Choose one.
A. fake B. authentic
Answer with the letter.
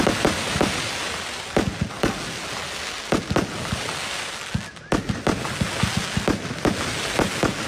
B